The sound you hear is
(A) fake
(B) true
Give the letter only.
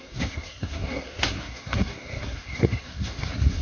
A